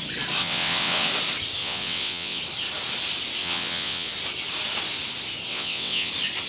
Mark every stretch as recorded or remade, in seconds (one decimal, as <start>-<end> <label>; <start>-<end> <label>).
0.0-0.4 recorded; 0.4-1.1 remade; 1.1-1.6 recorded; 1.6-2.4 remade; 2.4-3.4 recorded; 3.4-4.1 remade; 4.1-5.5 recorded; 5.5-6.1 remade; 6.1-6.5 recorded